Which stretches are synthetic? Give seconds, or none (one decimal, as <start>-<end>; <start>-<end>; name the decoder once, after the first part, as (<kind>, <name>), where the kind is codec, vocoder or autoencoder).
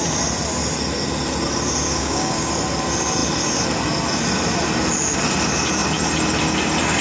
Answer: 2.0-2.5 (codec, DAC)